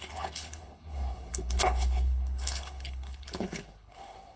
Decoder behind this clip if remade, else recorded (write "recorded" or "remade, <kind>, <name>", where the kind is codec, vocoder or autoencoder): remade, codec, HILCodec